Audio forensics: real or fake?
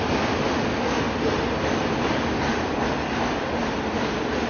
real